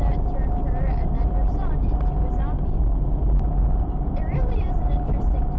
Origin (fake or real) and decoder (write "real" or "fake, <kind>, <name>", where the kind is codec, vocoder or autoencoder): real